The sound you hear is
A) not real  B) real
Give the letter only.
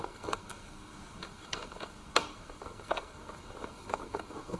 A